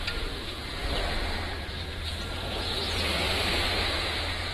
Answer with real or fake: fake